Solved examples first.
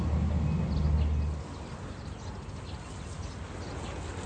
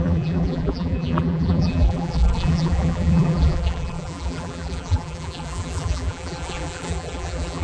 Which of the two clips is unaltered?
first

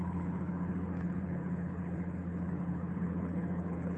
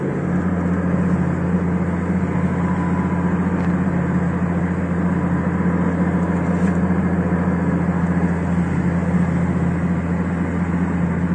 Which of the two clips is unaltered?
second